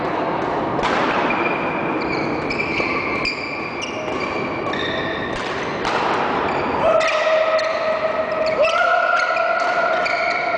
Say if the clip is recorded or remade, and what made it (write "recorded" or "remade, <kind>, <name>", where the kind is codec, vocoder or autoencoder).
recorded